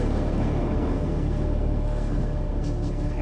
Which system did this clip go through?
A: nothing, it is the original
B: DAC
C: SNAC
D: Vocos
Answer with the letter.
C